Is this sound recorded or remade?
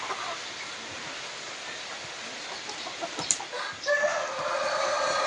remade